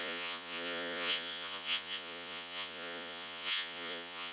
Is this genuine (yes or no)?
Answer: no